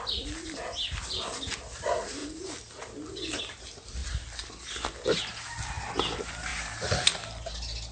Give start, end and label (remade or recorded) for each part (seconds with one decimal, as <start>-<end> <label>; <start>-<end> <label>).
0.0-7.9 recorded